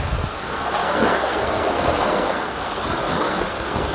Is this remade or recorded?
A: remade